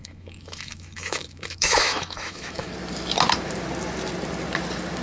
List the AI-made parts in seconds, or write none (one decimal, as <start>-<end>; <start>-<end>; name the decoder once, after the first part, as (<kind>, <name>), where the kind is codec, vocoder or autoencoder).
0.0-2.7 (autoencoder, DAC-VAE)